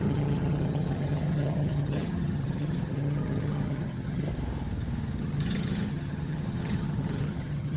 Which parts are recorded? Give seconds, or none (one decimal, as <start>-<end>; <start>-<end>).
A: 4.3-5.2